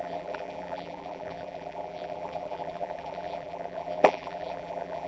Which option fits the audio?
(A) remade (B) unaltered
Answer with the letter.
A